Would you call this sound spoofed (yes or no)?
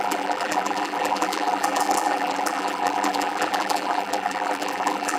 yes